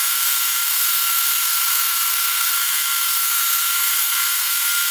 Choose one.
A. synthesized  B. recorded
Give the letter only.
A